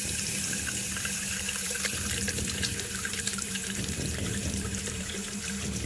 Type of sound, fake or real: fake